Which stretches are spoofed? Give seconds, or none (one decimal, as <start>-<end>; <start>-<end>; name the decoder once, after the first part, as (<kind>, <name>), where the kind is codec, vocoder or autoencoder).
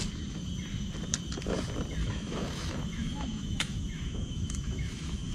2.0-5.3 (autoencoder, DAC-VAE)